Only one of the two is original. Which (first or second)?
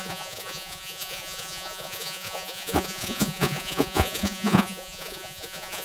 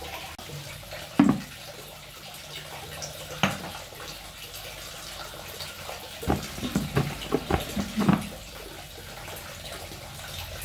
second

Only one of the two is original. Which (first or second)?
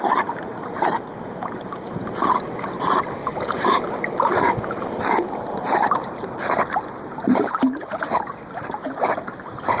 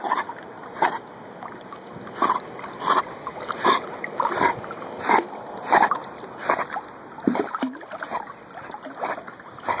second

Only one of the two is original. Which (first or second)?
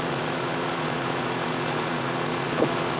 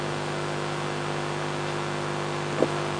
second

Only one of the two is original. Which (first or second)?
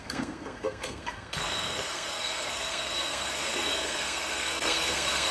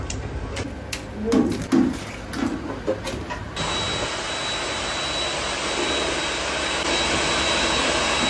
second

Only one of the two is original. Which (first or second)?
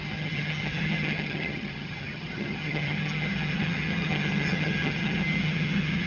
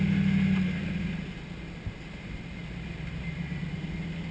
second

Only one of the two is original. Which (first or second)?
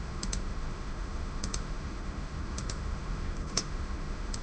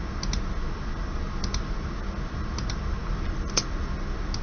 second